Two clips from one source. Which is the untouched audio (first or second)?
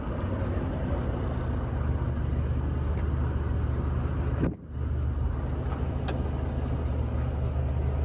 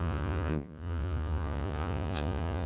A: first